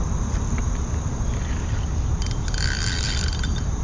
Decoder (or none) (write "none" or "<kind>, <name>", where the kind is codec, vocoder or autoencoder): none